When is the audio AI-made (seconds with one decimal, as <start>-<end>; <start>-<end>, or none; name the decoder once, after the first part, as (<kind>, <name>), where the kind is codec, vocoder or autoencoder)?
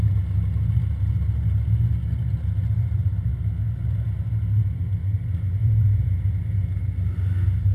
5.6-6.8 (vocoder, Vocos)